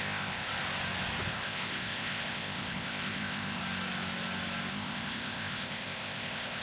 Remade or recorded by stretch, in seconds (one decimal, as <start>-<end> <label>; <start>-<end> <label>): 0.0-0.5 remade; 0.5-1.3 recorded; 1.3-3.6 remade; 3.6-4.7 recorded; 4.7-6.6 remade